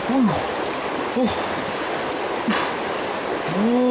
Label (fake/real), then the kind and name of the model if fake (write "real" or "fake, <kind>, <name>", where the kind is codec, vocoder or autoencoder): real